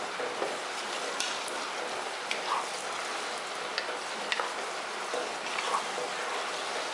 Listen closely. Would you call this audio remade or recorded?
recorded